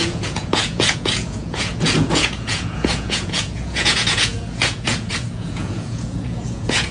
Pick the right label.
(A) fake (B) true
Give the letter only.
A